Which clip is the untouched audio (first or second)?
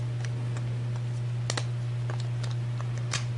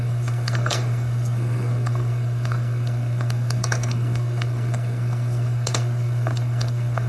first